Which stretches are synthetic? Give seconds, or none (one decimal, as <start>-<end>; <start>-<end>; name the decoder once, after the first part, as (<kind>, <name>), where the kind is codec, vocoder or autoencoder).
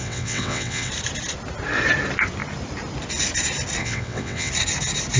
0.0-0.9 (vocoder, WaveNeXt); 3.8-4.5